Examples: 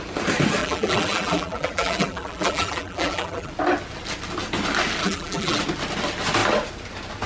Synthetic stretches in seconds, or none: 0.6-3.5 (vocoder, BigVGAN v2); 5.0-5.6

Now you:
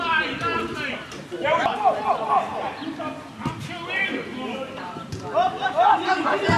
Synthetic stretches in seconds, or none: none

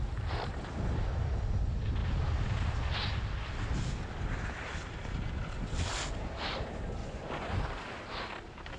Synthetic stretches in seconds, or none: 7.0-7.6 (vocoder, Vocos)

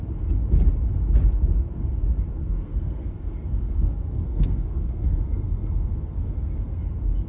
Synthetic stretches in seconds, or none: 2.4-6.8 (codec, SNAC)